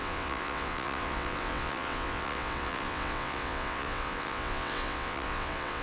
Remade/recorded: remade